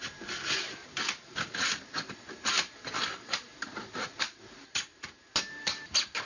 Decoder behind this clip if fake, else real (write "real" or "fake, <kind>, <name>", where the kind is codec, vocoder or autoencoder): fake, vocoder, BigVGAN v2